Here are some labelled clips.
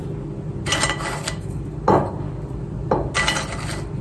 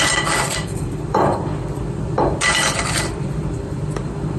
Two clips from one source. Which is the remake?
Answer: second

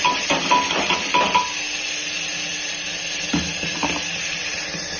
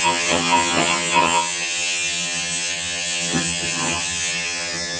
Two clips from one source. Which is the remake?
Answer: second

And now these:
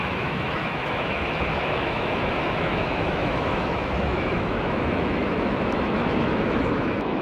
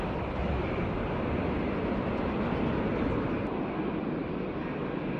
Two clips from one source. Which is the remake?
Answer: first